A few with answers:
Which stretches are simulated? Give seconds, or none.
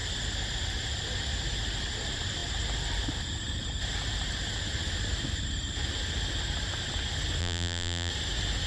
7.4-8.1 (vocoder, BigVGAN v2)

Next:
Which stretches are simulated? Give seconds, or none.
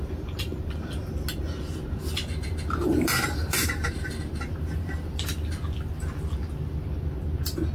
2.3-5.3 (vocoder, BigVGAN v2)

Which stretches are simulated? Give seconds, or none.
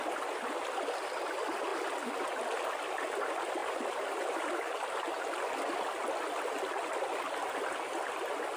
3.6-5.3 (vocoder, BigVGAN v2)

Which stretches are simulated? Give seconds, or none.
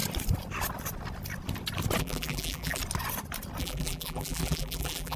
2.0-2.8 (vocoder, BigVGAN v2); 3.6-5.2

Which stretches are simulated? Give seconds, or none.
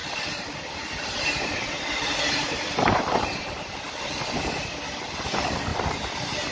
0.0-3.8 (vocoder, BigVGAN v2); 5.7-6.5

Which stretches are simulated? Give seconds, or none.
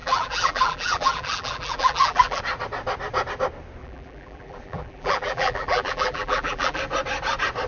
0.0-2.4 (vocoder, BigVGAN v2); 3.8-6.8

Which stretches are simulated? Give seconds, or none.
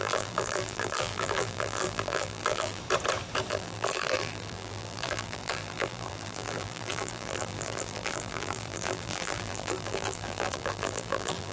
0.0-2.8 (vocoder, BigVGAN v2); 3.5-11.5